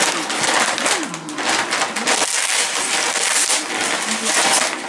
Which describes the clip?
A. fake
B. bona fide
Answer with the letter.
B